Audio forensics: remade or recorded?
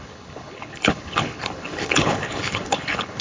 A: remade